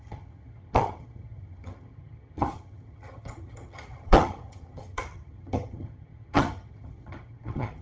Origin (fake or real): fake